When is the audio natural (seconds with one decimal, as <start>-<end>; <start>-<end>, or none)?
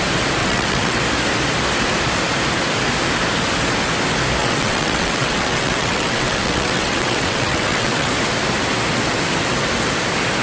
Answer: 0.0-0.4; 1.0-4.4; 8.1-10.4